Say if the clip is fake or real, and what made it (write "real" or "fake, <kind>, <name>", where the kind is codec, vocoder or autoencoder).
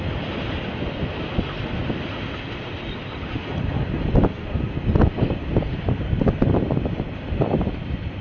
real